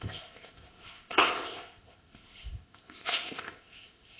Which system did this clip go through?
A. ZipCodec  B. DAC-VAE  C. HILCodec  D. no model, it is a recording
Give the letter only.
A